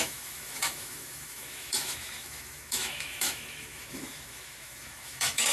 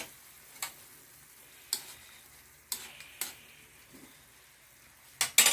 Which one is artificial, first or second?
first